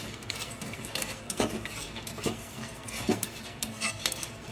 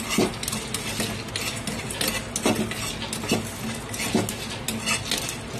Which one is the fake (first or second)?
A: first